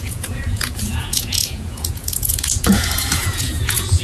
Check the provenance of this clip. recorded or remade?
remade